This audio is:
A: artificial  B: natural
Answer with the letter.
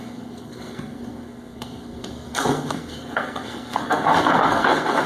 A